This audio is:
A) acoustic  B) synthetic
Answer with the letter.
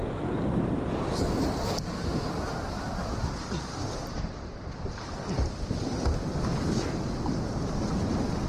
A